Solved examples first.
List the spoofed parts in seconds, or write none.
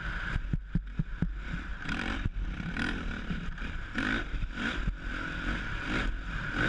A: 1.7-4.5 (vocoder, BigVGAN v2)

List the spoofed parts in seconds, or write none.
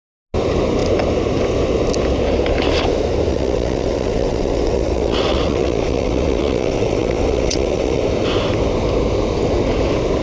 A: 3.3-8.0 (vocoder, WaveNeXt)